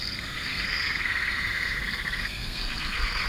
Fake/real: fake